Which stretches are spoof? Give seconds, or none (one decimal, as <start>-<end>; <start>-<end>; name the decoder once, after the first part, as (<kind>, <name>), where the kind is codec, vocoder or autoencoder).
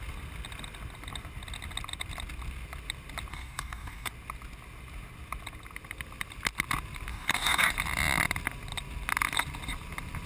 3.3-4.1 (codec, DAC); 7.1-7.7